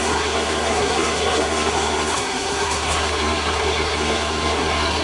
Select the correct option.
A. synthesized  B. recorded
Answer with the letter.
A